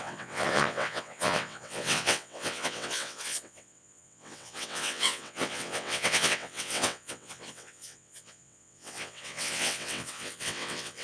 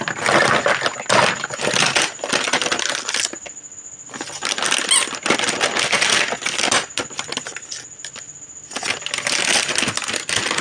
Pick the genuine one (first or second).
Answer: second